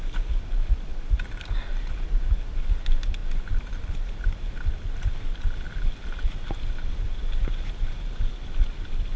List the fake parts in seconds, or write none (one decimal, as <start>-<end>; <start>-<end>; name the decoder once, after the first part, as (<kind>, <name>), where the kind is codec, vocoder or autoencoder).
3.2-3.9 (vocoder, BigVGAN v2)